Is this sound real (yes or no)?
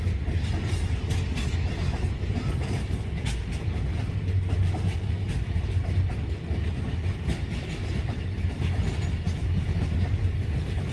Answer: yes